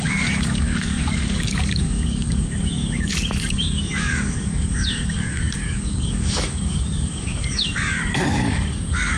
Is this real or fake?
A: fake